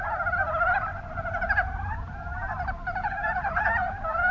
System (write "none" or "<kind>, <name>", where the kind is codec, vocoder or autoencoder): none